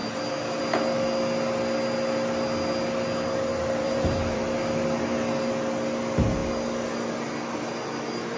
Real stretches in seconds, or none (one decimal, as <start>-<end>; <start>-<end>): 0.0-3.5; 4.5-8.4